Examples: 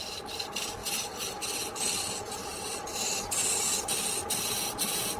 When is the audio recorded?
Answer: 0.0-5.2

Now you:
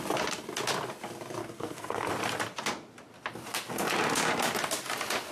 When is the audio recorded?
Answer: 0.0-1.4; 2.1-5.3

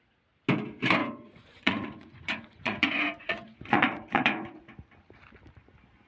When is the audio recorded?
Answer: 0.0-1.0; 4.6-6.1